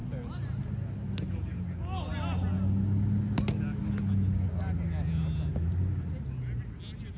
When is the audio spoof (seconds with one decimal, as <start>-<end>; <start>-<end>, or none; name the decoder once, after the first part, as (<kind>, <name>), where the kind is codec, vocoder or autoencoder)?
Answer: none